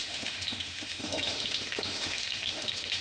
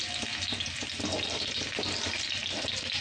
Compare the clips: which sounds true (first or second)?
second